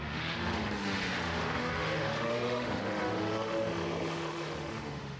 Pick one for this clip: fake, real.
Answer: fake